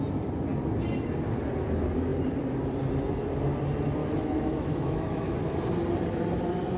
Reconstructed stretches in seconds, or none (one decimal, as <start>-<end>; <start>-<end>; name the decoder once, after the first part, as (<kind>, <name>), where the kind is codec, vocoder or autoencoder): 4.0-5.5 (autoencoder, DAC-VAE)